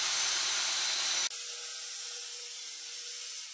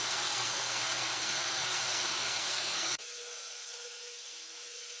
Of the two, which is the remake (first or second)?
second